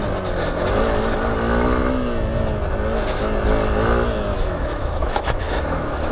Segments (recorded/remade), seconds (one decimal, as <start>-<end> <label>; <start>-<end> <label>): 0.0-4.3 recorded; 4.3-6.1 remade